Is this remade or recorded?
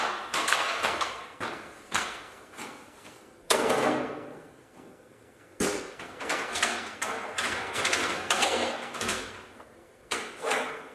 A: remade